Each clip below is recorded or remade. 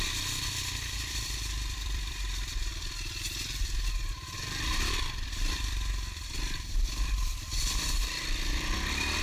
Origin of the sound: remade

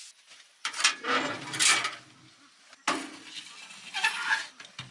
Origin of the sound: recorded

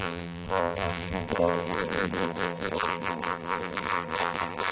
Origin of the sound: remade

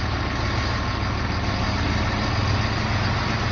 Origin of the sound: recorded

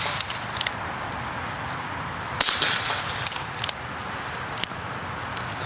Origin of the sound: remade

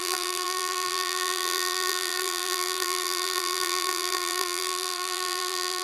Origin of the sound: remade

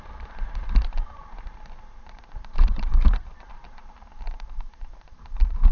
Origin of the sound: remade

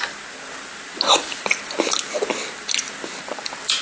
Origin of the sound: recorded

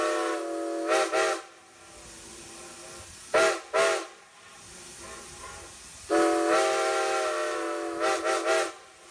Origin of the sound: recorded